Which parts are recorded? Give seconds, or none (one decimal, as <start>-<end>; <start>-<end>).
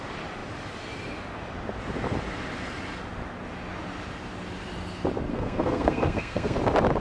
0.0-5.3; 6.6-7.0